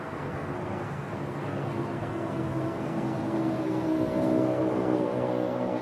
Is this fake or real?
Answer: fake